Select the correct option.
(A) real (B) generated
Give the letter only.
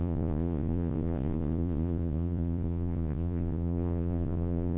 B